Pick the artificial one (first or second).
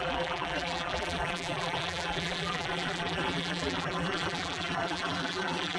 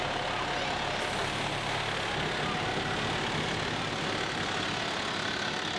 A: first